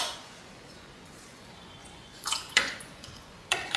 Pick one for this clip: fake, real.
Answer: fake